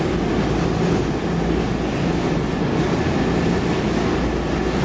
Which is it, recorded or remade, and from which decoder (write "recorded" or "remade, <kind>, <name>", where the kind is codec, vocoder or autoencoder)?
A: recorded